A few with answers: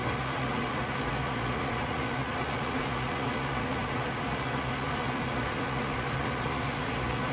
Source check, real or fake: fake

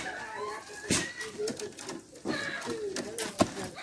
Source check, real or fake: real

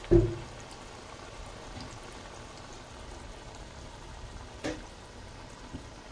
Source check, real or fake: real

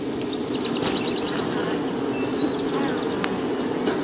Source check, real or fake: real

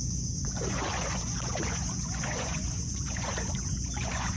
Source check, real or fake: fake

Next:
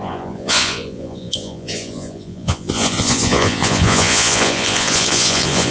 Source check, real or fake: fake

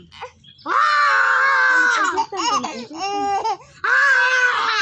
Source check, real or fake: real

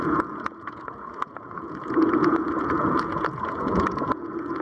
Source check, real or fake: fake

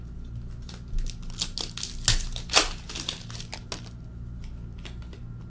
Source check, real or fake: real